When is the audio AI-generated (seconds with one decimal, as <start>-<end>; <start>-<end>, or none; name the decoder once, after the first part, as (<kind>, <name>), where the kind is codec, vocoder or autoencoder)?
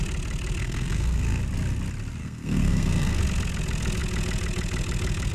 0.6-1.4 (codec, SNAC); 2.2-3.2